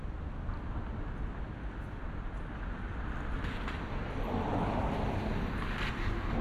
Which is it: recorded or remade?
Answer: recorded